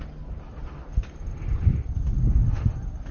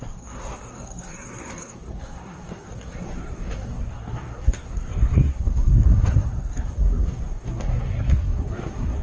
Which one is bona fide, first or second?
first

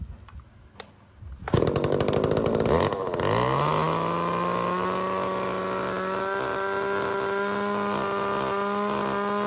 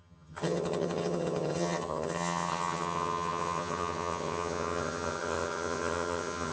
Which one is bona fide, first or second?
first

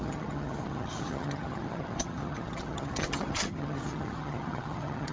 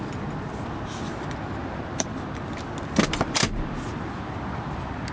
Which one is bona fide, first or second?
second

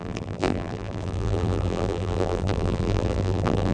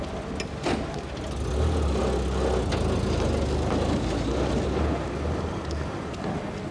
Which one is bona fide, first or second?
second